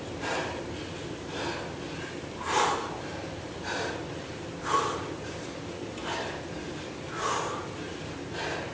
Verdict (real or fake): real